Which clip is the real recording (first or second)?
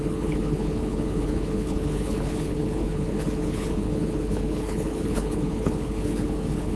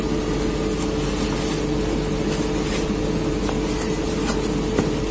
second